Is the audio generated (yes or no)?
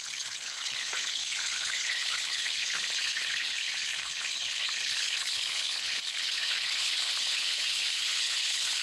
yes